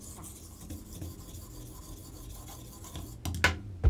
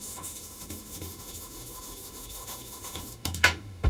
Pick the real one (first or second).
first